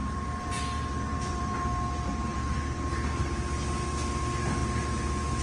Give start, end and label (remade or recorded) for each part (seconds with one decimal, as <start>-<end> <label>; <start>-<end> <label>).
0.0-0.5 remade; 0.5-1.1 recorded; 1.1-1.8 remade; 1.8-2.3 recorded; 2.3-3.2 remade; 3.2-5.4 recorded